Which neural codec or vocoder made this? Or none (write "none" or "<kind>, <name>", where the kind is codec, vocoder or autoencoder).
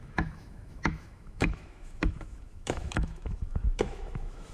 autoencoder, DAC-VAE